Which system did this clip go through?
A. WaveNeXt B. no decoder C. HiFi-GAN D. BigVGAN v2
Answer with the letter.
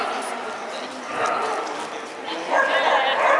B